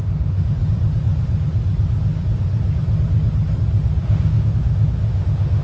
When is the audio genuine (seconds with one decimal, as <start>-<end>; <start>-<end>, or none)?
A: 0.6-4.0